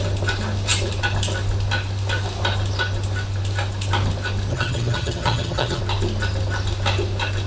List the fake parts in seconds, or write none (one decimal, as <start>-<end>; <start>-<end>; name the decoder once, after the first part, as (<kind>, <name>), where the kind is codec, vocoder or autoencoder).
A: 4.5-5.8 (vocoder, HiFi-GAN)